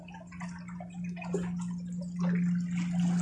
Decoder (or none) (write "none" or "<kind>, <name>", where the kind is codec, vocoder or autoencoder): none